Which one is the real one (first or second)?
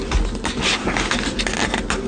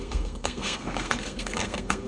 first